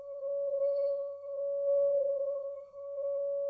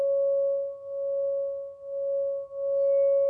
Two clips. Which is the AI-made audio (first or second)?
first